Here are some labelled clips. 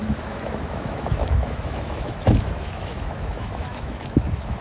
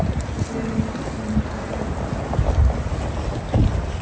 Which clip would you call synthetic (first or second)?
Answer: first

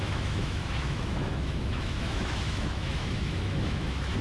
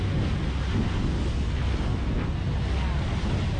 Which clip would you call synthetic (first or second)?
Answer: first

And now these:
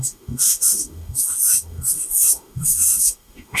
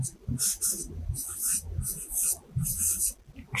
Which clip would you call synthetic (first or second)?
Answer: first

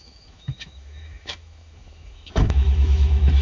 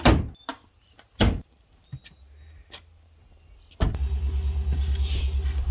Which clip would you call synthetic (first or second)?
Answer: first